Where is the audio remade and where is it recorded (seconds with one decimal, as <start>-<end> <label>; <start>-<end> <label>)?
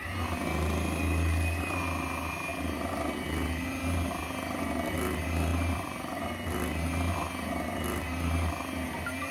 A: 0.0-5.5 recorded; 5.5-6.2 remade; 6.2-9.3 recorded